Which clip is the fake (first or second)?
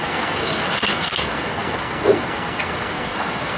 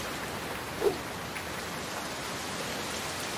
first